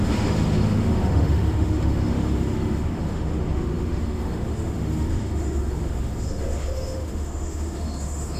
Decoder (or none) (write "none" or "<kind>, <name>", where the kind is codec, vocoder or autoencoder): autoencoder, DAC-VAE